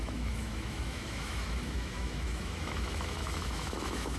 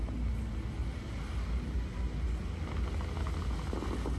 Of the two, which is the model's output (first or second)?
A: first